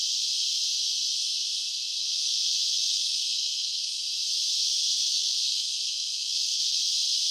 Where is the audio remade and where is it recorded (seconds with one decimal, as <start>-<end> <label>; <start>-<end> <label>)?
0.0-2.0 recorded; 2.0-4.0 remade; 4.0-5.1 recorded; 5.1-6.8 remade; 6.8-7.3 recorded